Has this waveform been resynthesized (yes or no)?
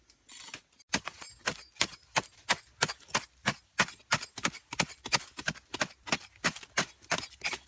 no